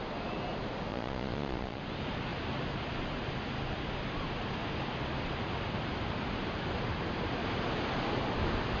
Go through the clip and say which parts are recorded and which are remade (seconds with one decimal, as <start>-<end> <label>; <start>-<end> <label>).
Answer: 0.0-0.9 recorded; 0.9-1.8 remade; 1.8-8.8 recorded